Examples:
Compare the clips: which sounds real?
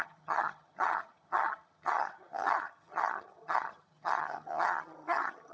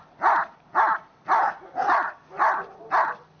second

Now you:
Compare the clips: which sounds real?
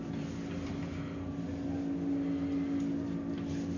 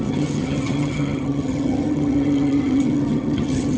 first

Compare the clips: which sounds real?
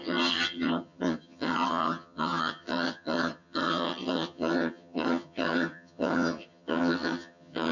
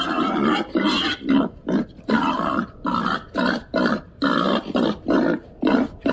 second